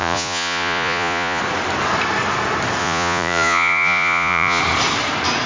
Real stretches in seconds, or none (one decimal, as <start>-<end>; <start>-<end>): 1.4-2.8; 4.6-5.5